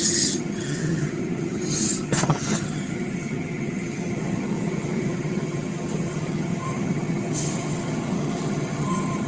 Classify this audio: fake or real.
fake